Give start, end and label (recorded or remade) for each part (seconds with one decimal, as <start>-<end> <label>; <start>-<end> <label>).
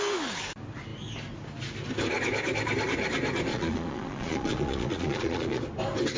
0.0-3.5 recorded; 3.5-5.6 remade; 5.6-6.2 recorded